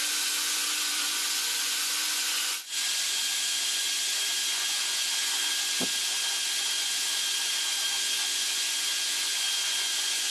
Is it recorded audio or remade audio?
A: remade